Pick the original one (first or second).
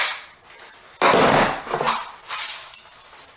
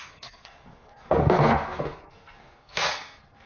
first